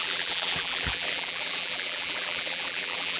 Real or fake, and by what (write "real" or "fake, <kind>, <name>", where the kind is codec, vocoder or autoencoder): fake, vocoder, BigVGAN v2